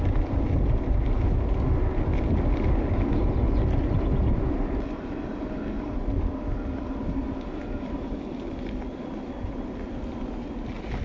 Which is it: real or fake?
real